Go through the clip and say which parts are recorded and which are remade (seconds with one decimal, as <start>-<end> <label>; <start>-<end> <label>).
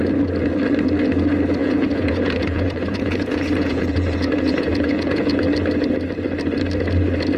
0.0-1.6 recorded; 1.6-5.4 remade; 5.4-7.4 recorded